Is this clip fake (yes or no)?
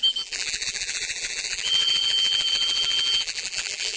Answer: yes